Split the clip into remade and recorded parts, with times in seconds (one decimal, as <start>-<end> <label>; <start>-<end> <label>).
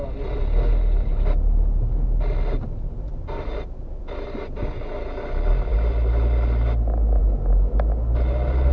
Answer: 0.0-8.7 recorded